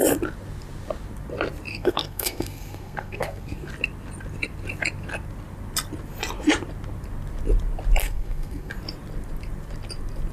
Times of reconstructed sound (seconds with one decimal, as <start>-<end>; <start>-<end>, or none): 1.7-3.7; 8.0-8.7